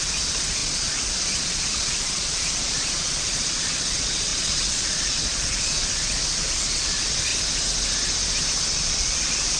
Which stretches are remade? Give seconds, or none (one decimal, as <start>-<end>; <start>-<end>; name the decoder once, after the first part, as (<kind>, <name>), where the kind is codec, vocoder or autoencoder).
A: 0.0-7.3 (vocoder, Vocos); 8.8-9.6